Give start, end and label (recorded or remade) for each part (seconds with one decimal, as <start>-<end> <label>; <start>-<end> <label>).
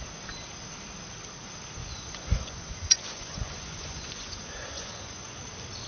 0.0-1.8 recorded; 1.8-5.3 remade; 5.3-5.9 recorded